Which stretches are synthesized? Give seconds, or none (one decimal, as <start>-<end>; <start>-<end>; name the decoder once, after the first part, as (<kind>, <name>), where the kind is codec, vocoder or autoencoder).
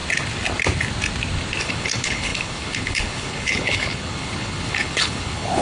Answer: 1.6-5.6 (codec, HILCodec)